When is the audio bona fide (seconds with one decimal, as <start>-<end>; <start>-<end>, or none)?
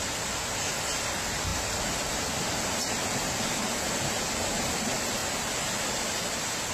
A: 0.0-6.7